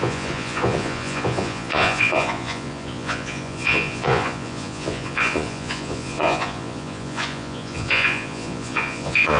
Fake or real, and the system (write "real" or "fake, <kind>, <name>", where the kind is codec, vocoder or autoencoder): fake, vocoder, Vocos